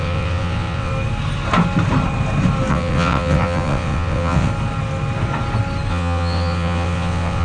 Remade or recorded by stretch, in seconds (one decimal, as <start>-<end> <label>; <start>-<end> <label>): 0.0-0.9 remade; 0.9-2.7 recorded; 2.7-4.5 remade; 4.5-5.9 recorded; 5.9-7.4 remade